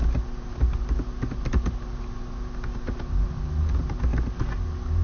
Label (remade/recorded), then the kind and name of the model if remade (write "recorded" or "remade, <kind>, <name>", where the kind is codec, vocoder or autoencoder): recorded